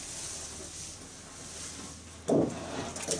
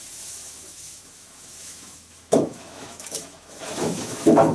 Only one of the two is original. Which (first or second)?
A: first